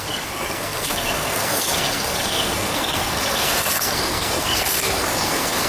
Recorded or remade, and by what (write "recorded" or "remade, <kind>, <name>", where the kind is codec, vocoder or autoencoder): remade, codec, SNAC